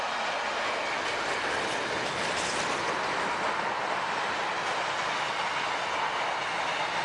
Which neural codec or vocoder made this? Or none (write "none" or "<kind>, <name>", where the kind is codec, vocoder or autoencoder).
none